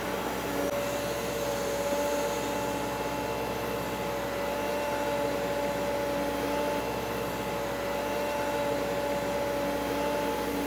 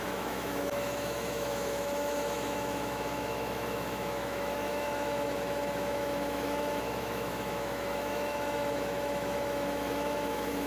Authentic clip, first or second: first